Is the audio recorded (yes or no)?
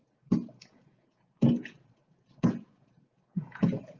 no